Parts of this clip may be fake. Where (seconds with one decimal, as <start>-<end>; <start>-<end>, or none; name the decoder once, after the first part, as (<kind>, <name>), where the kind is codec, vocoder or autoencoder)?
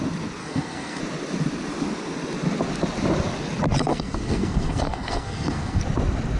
0.4-1.0 (codec, SNAC); 3.9-5.8